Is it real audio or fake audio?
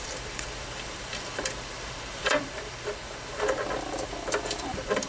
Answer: fake